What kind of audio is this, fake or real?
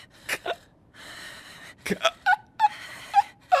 fake